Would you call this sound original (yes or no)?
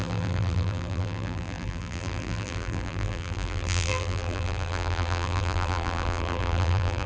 no